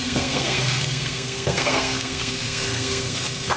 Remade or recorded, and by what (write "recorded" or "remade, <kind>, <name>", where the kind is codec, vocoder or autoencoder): remade, codec, SNAC